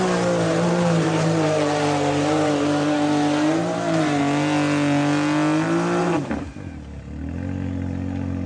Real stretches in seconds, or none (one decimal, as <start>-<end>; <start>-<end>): 0.0-0.5; 4.2-6.0; 6.5-8.5

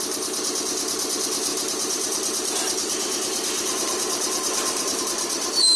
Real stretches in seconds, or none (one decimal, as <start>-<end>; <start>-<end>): 0.0-1.5; 5.0-5.8

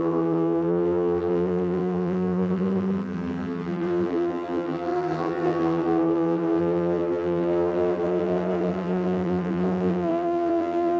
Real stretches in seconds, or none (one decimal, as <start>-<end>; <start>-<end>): none

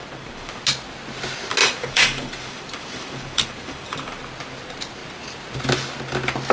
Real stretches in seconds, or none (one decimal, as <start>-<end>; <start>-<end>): 0.6-1.6; 4.2-6.5